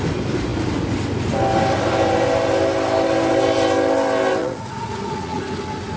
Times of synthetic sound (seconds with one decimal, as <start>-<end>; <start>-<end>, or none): 4.4-5.4

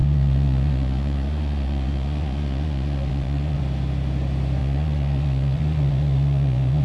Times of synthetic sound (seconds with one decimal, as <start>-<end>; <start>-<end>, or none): 0.0-3.6; 4.6-6.8

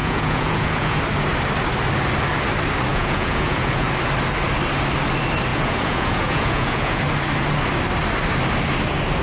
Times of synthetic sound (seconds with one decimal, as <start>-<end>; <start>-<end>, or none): 0.0-1.0; 2.9-3.9; 5.5-7.0

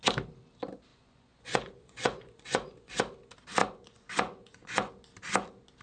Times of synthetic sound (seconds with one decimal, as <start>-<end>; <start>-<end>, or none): 0.9-2.9; 3.6-4.9

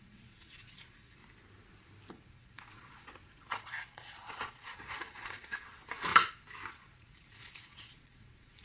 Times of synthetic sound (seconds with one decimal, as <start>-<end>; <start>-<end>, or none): 0.0-1.2; 2.1-6.1; 6.7-8.6

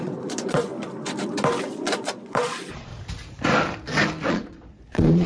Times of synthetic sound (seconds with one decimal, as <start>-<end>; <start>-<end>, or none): 0.0-0.7; 1.6-2.9; 4.3-5.3

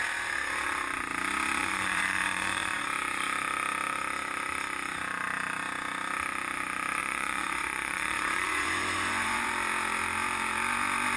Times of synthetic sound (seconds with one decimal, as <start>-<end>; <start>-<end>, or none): 1.6-2.8; 7.0-9.5

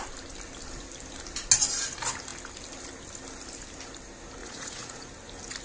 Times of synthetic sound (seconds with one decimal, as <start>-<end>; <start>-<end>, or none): 4.4-5.1